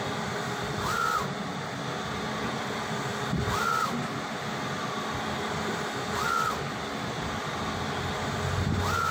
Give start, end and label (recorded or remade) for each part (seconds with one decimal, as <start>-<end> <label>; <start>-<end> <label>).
0.0-9.1 recorded